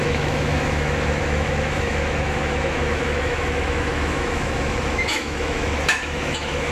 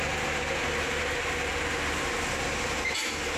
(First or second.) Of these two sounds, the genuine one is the second